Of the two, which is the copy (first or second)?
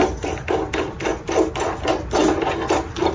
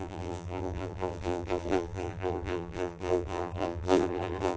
second